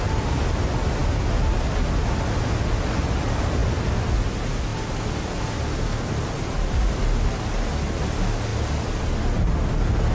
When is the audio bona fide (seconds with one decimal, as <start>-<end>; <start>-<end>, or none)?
0.0-10.1